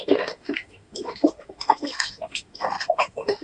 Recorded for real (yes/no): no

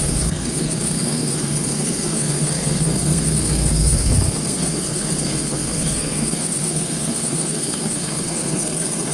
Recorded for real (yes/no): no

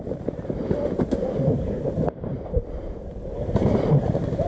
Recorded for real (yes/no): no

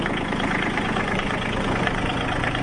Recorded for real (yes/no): no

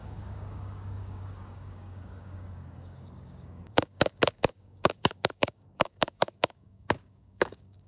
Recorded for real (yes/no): no